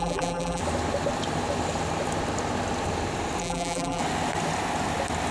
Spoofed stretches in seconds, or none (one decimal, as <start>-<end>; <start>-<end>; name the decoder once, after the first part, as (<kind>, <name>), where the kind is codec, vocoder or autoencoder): 0.0-0.6 (vocoder, BigVGAN v2); 3.4-4.0